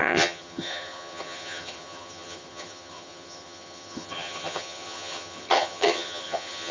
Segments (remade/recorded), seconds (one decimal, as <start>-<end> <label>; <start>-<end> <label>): 0.0-6.7 remade